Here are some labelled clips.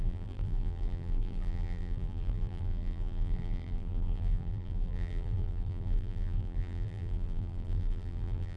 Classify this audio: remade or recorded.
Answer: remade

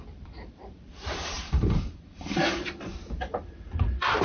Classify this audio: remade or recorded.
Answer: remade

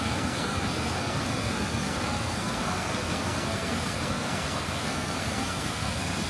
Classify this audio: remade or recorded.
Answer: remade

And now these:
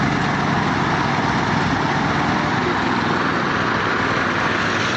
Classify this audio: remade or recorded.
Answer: recorded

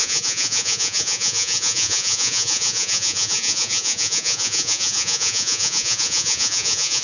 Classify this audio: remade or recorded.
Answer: remade